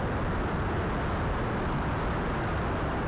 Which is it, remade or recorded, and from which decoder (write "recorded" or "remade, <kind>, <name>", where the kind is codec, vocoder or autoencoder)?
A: recorded